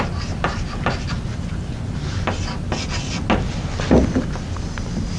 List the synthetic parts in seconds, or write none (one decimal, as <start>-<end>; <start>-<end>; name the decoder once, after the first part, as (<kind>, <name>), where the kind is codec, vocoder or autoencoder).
none